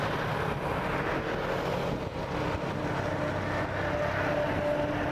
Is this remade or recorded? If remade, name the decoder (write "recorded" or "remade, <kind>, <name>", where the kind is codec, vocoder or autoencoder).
recorded